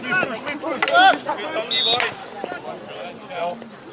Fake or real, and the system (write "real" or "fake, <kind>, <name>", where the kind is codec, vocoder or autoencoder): real